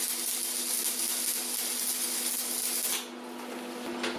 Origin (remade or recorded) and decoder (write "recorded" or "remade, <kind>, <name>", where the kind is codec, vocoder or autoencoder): recorded